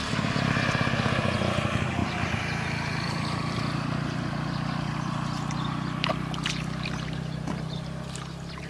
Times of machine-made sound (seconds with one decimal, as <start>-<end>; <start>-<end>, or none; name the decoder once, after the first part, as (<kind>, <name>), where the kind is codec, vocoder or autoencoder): 2.0-4.3 (vocoder, BigVGAN v2)